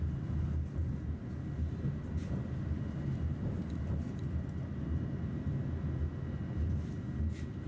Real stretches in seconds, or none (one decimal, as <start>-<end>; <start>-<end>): 0.0-7.7